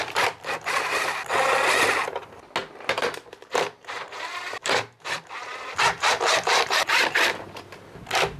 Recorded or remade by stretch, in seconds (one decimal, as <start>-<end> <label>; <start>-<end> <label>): 0.0-2.6 recorded; 2.6-7.6 remade; 7.6-8.4 recorded